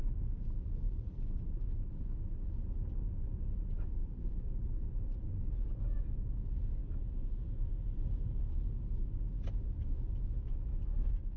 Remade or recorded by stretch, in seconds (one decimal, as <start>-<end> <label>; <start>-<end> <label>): 0.0-11.4 recorded